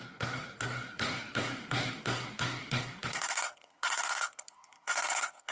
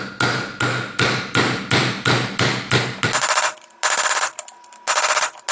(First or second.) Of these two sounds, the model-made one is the first